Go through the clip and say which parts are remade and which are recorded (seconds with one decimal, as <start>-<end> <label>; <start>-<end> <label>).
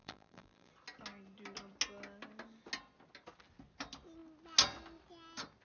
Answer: 0.0-0.7 remade; 0.7-5.6 recorded